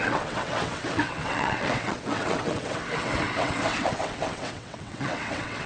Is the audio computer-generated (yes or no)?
yes